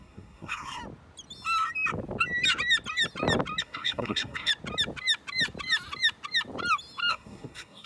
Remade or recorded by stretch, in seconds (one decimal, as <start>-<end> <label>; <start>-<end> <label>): 0.0-0.8 remade; 0.8-3.6 recorded; 3.6-4.5 remade; 4.5-7.1 recorded; 7.1-7.9 remade

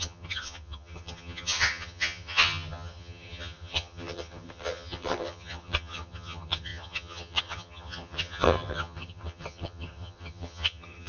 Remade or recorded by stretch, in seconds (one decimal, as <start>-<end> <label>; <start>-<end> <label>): 0.0-11.1 remade

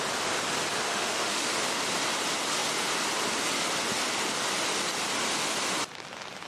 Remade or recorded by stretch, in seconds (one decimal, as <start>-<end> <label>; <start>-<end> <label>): 0.0-0.9 recorded; 0.9-1.5 remade; 1.5-6.5 recorded

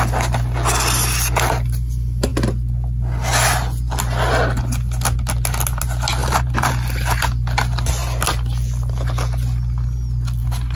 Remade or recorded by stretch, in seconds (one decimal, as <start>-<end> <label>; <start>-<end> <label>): 0.0-6.2 recorded; 6.2-6.7 remade; 6.7-10.8 recorded

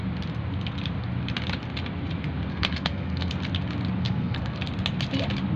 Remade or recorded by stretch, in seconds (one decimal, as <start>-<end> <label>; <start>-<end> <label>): 0.0-2.5 recorded; 2.5-3.3 remade; 3.3-4.0 recorded; 4.0-4.6 remade; 4.6-5.6 recorded

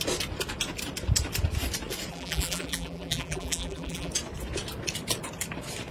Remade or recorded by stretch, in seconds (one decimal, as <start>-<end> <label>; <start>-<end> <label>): 0.0-2.1 recorded; 2.1-4.1 remade; 4.1-5.9 recorded

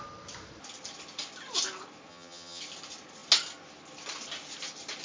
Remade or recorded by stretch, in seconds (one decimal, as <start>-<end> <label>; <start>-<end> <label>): 0.0-2.1 recorded; 2.1-2.6 remade; 2.6-5.0 recorded

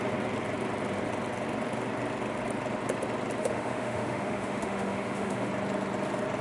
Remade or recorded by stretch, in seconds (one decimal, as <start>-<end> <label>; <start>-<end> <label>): 0.0-3.4 recorded; 3.4-5.5 remade; 5.5-6.4 recorded